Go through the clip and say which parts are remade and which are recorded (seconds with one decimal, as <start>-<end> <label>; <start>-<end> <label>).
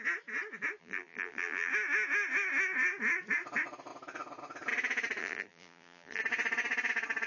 0.0-0.8 recorded; 0.8-1.7 remade; 1.7-5.2 recorded; 5.2-6.2 remade; 6.2-7.3 recorded